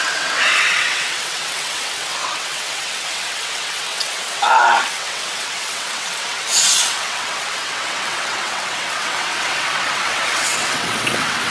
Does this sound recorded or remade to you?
remade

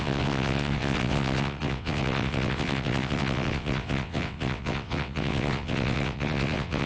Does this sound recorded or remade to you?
remade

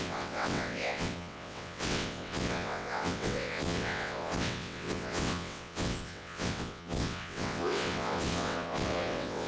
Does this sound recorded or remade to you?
remade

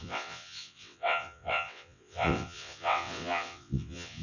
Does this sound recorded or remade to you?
remade